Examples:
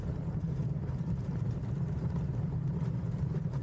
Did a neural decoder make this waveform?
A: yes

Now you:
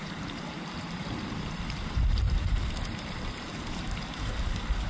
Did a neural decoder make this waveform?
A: yes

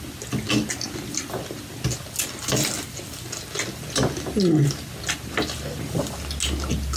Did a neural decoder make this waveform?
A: no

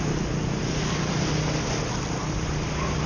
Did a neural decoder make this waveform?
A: no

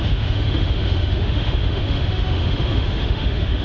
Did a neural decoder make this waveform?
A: yes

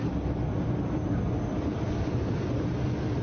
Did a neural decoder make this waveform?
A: no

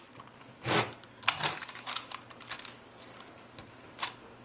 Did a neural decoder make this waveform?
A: no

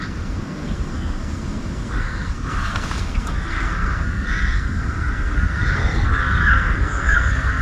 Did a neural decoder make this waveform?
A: yes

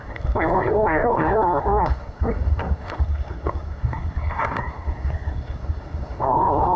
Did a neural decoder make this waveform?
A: yes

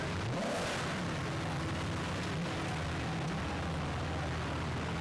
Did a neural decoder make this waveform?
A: no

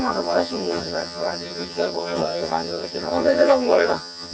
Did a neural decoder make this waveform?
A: yes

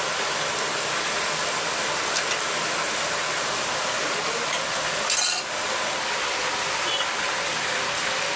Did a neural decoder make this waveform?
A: no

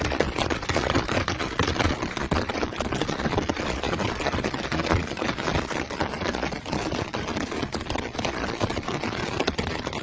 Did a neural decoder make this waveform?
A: yes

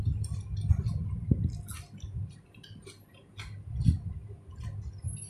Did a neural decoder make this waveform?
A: no